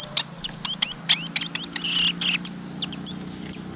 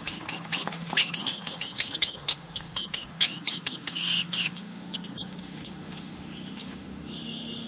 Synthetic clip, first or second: second